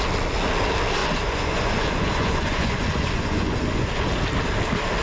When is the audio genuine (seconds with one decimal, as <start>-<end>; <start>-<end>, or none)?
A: 0.0-1.0; 4.0-5.0

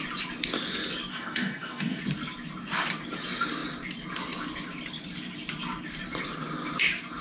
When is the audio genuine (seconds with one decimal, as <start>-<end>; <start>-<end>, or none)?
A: 0.0-1.1; 2.0-7.2

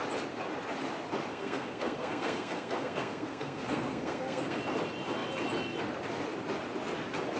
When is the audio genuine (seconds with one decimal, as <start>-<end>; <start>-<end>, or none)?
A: 0.0-1.3; 4.6-7.4

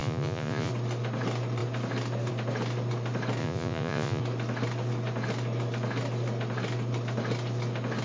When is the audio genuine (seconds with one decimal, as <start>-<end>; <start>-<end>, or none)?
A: 0.7-3.4; 4.2-8.0

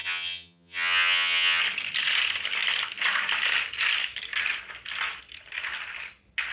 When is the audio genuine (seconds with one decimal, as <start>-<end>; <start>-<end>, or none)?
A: 1.6-6.5

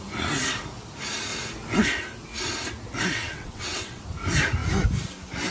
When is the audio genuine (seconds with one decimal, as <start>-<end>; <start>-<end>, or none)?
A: 0.0-3.2; 4.0-5.5